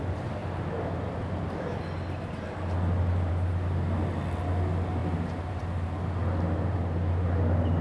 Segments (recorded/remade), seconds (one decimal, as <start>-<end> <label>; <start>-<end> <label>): 0.0-7.8 recorded